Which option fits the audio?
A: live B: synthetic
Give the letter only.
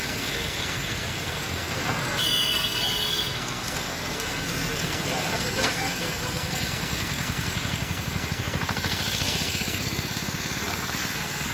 B